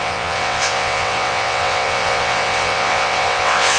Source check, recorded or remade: remade